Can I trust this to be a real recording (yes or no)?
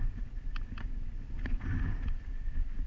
yes